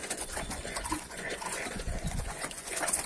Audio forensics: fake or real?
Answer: fake